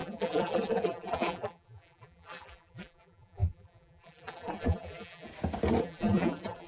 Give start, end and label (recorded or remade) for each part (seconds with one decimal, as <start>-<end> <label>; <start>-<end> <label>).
0.0-5.3 remade; 5.3-5.8 recorded; 5.8-6.7 remade